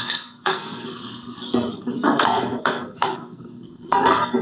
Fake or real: fake